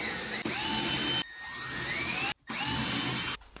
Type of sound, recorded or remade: recorded